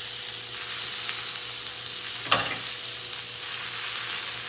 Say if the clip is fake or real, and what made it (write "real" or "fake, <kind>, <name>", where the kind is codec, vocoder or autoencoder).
real